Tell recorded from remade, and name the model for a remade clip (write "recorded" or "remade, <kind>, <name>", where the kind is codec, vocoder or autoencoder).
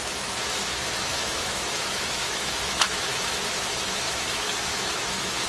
remade, autoencoder, DAC-VAE